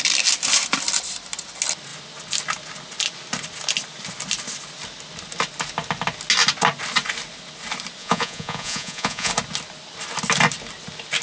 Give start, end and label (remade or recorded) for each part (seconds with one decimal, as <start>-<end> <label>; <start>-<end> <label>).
0.0-8.0 recorded; 8.0-9.3 remade; 9.3-11.2 recorded